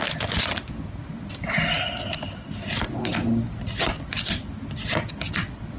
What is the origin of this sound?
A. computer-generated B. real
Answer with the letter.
B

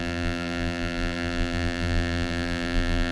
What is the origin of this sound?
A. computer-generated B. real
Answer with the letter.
A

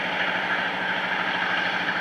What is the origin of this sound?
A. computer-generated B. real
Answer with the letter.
B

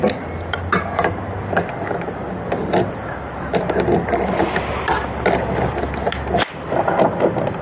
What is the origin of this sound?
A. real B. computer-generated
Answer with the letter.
A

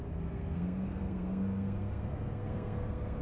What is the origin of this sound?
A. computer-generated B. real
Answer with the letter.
A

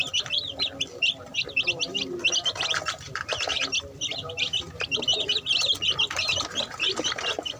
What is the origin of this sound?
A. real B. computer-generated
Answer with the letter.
B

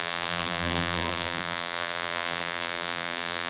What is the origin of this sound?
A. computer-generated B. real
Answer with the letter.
A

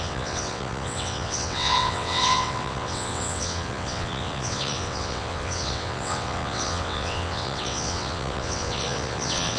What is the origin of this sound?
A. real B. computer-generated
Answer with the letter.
B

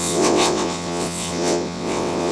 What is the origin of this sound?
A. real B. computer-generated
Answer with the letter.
B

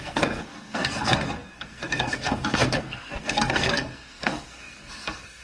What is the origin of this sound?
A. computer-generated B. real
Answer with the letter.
A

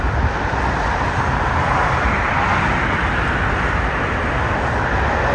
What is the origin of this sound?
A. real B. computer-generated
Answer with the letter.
A